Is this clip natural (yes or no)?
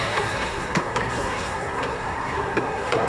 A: no